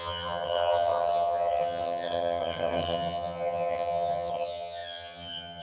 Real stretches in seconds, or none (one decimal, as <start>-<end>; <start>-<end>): none